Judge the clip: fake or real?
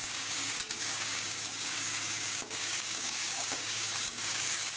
fake